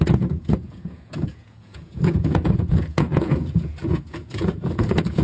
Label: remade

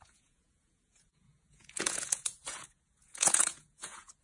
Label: remade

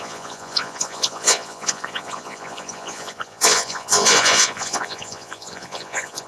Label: remade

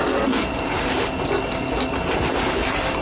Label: recorded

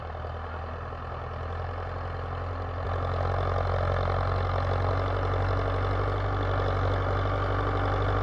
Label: recorded